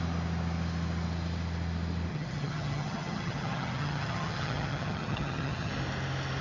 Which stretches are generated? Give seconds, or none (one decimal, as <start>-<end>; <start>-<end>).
2.1-5.7